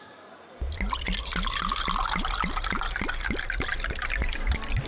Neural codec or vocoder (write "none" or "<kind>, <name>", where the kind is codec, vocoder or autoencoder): none